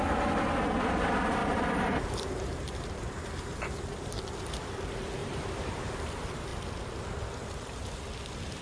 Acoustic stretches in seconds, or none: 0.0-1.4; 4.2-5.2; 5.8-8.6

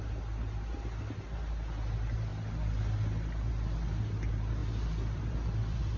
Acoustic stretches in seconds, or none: 0.0-4.6

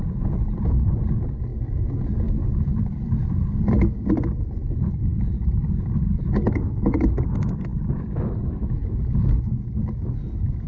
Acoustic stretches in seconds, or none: 0.0-10.7

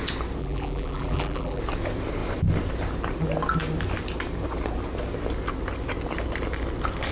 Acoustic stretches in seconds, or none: 0.0-0.4; 1.6-7.1

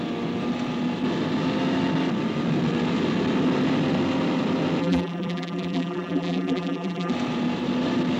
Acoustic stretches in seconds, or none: 0.0-4.8; 7.1-8.2

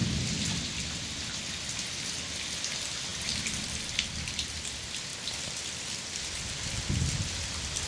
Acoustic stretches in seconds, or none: 0.0-7.9

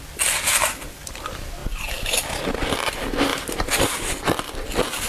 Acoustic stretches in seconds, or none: 0.0-3.3; 4.1-5.1

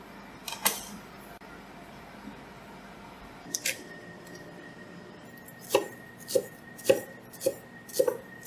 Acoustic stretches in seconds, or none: 0.0-0.4; 5.0-8.5